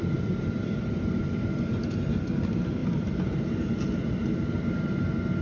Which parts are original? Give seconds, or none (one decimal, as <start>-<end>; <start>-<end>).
0.0-2.8; 3.4-5.4